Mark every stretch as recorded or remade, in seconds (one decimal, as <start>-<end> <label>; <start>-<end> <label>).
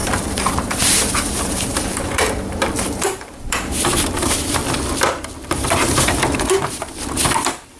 0.0-4.6 remade; 4.6-5.6 recorded; 5.6-7.8 remade